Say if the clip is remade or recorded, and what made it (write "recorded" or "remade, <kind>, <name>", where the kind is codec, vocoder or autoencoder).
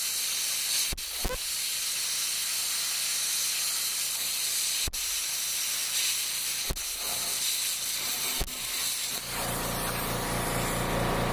recorded